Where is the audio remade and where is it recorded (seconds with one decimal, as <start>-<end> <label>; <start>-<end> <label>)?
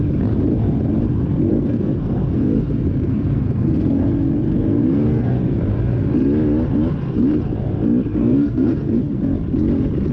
0.0-1.5 recorded; 1.5-5.6 remade; 5.6-8.2 recorded; 8.2-9.2 remade; 9.2-10.1 recorded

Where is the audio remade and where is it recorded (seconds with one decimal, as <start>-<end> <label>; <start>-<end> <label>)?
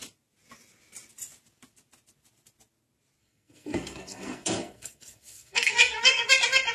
0.0-3.2 recorded; 3.2-6.3 remade; 6.3-6.7 recorded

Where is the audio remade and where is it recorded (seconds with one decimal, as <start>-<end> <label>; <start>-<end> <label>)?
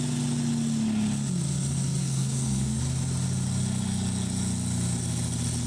0.0-2.0 recorded; 2.0-2.8 remade; 2.8-5.7 recorded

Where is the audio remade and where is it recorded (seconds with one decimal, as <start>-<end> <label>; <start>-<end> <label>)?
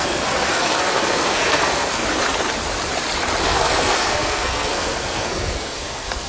0.0-2.0 remade; 2.0-3.4 recorded; 3.4-6.3 remade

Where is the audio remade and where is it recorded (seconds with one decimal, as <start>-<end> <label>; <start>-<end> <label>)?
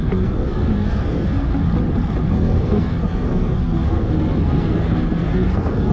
0.0-1.5 remade; 1.5-2.3 recorded; 2.3-5.9 remade